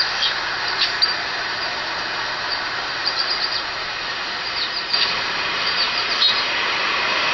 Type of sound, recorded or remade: remade